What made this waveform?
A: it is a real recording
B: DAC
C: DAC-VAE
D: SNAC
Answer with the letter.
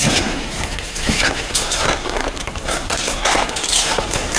D